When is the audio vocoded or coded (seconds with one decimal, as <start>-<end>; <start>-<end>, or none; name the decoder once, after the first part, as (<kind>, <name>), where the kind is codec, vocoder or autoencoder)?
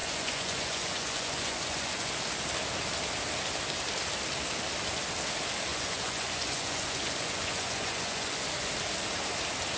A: 0.0-2.1 (vocoder, Vocos); 5.7-8.7